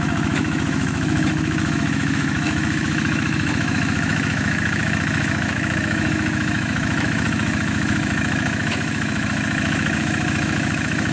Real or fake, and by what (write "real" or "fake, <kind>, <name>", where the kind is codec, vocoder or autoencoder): fake, autoencoder, DAC-VAE